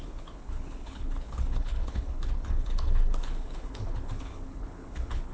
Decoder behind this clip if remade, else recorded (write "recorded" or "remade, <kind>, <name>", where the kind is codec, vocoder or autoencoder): remade, codec, HILCodec